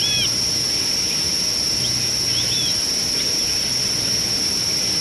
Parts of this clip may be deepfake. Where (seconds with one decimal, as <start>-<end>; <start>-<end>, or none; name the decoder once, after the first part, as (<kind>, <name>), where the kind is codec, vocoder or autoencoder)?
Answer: none